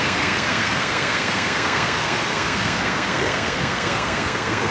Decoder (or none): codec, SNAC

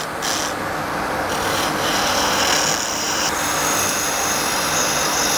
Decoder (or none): none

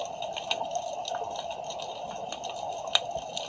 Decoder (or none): none